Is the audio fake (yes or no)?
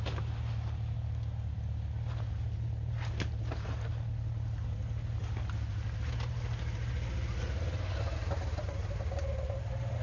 no